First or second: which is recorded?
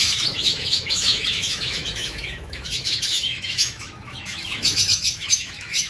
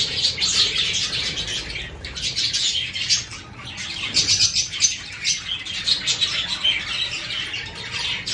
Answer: second